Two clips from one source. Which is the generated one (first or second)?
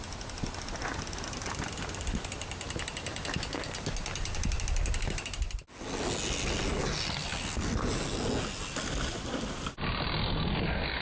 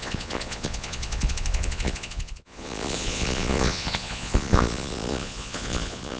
second